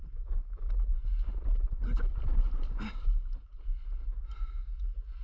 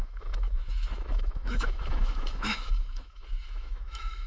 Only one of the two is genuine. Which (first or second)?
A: first